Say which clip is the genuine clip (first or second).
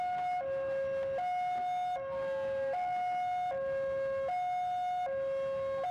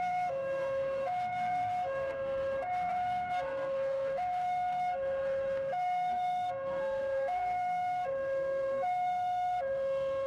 first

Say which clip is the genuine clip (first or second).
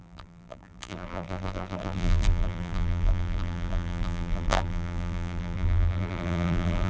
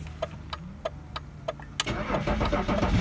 second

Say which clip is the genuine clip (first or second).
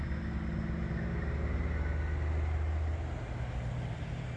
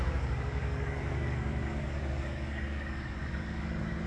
first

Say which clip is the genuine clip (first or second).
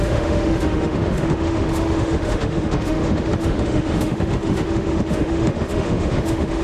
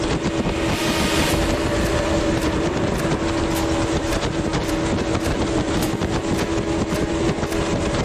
second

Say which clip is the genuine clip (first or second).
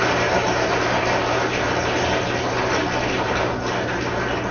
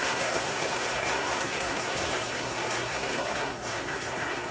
first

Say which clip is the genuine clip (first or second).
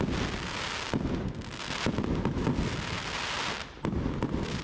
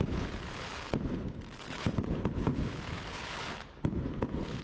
first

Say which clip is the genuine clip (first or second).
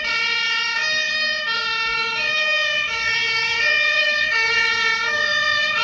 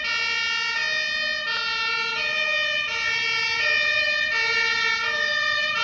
second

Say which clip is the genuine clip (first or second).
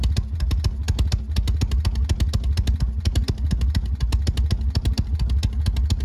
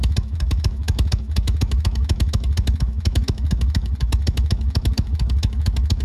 first